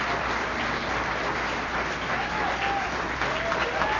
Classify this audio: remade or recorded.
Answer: recorded